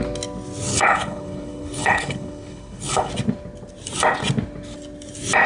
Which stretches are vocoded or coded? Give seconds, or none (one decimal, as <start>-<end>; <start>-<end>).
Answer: 0.7-3.1